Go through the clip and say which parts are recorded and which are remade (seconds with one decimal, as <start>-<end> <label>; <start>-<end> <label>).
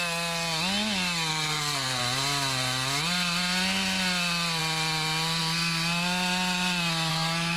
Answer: 0.0-1.3 recorded; 1.3-2.0 remade; 2.0-7.1 recorded; 7.1-7.6 remade